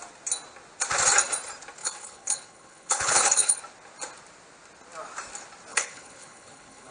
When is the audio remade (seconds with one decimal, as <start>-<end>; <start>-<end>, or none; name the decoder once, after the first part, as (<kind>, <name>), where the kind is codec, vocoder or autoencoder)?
1.8-3.6 (codec, HILCodec); 5.7-6.9